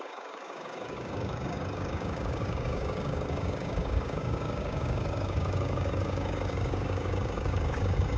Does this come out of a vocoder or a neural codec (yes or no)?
yes